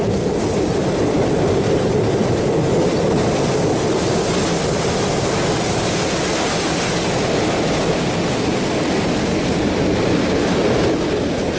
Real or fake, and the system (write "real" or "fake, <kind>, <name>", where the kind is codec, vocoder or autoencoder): real